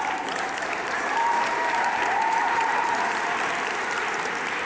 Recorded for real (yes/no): no